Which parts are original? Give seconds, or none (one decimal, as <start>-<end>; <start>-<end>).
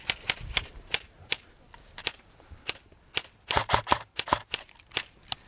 0.0-0.7; 1.3-2.0; 2.7-3.9; 4.4-5.5